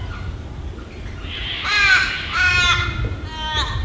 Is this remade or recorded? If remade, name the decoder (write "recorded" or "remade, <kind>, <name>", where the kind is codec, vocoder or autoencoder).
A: recorded